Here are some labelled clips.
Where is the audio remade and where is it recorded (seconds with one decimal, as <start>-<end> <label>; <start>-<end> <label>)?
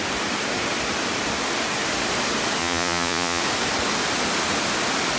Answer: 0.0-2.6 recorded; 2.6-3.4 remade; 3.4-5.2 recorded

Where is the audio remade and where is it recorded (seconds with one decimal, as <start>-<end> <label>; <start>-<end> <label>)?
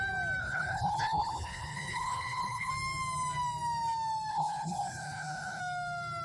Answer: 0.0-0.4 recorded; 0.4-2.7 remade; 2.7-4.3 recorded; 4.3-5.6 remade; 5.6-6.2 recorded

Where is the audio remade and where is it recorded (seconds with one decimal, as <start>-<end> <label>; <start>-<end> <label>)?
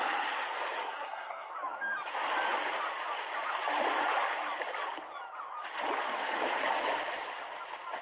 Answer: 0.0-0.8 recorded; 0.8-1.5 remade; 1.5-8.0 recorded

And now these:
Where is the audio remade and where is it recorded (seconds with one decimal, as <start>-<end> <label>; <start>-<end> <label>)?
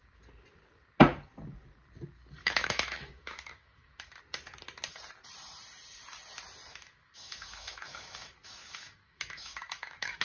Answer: 0.0-2.4 recorded; 2.4-4.2 remade; 4.2-6.7 recorded; 6.7-10.2 remade